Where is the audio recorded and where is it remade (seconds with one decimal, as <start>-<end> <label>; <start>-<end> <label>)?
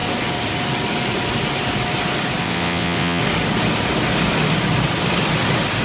0.0-2.4 recorded; 2.4-3.2 remade; 3.2-5.8 recorded